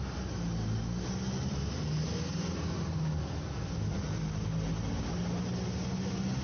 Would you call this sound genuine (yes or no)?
yes